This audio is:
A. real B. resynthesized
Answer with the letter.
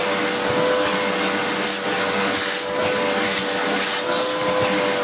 A